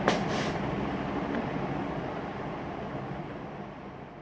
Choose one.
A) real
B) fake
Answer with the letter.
A